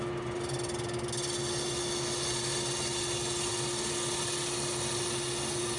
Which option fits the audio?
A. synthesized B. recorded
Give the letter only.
B